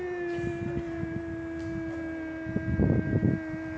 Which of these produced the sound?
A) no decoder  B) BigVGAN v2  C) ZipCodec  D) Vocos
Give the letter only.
A